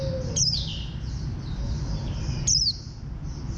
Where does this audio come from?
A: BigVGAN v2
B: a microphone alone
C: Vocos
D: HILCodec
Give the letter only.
B